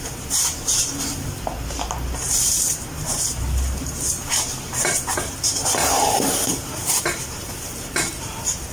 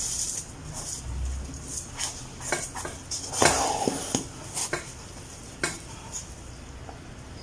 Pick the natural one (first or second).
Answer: second